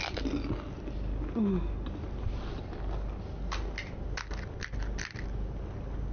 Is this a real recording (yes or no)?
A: yes